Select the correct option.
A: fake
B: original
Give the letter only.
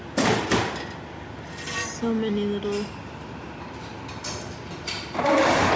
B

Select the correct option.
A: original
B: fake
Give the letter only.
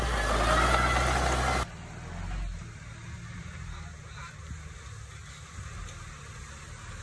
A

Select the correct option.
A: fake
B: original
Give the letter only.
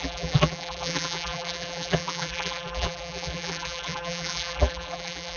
A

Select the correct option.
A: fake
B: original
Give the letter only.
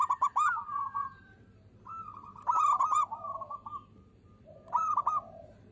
A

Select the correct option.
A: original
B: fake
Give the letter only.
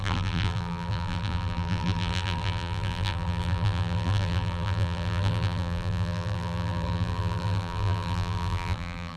B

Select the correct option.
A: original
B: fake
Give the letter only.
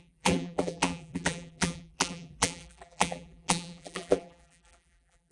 B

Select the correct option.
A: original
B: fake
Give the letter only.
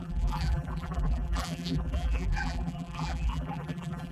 B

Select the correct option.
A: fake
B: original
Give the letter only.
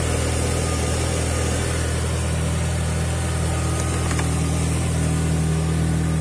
B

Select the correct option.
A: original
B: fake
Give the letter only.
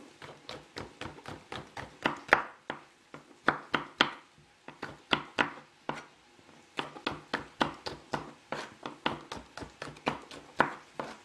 A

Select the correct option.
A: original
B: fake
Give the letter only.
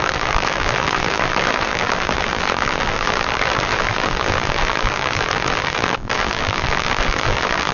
B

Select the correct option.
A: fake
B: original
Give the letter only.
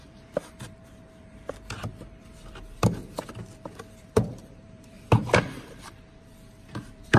A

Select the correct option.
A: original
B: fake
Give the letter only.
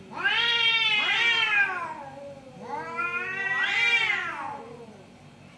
B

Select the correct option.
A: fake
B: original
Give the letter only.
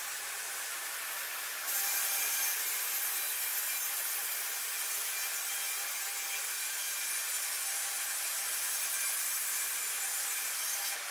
B